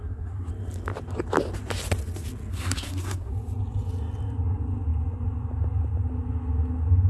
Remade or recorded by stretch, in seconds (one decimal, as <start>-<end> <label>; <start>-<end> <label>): 0.0-0.5 remade; 0.5-2.5 recorded; 2.5-3.3 remade; 3.3-7.1 recorded